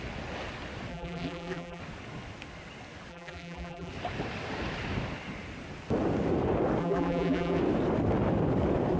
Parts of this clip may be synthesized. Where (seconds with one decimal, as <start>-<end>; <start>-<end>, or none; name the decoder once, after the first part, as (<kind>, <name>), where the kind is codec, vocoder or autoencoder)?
0.9-1.8 (vocoder, BigVGAN v2); 3.1-3.9; 6.8-7.6